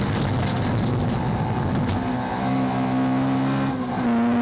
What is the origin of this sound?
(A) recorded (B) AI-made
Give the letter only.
A